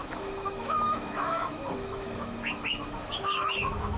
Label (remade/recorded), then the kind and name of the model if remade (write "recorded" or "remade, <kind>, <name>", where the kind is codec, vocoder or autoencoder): remade, autoencoder, DAC-VAE